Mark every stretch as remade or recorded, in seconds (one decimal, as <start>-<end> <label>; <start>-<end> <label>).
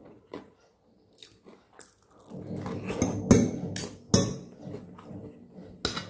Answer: 0.0-0.6 remade; 0.6-6.1 recorded